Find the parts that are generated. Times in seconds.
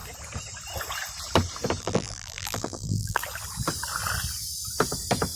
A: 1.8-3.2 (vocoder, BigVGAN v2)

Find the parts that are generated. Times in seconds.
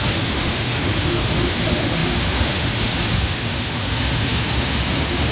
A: 0.0-5.3 (autoencoder, DAC-VAE)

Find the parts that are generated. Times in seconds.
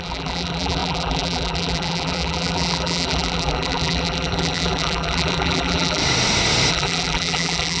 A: 0.0-6.0 (vocoder, BigVGAN v2); 6.7-7.8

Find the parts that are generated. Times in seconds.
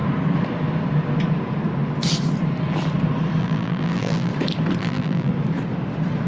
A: 3.4-4.3 (vocoder, BigVGAN v2); 4.8-5.3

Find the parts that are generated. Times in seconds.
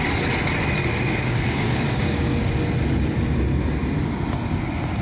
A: 0.8-2.5 (codec, DAC)